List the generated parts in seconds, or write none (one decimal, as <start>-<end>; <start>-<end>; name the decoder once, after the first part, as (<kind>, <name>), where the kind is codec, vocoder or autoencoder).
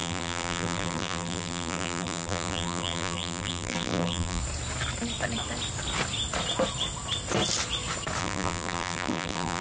0.0-4.4 (vocoder, BigVGAN v2); 8.2-9.6